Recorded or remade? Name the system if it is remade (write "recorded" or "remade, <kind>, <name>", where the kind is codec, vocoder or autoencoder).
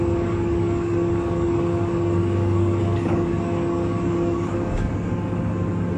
remade, codec, DAC